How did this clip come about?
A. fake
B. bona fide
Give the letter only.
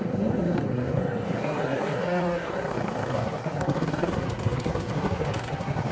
A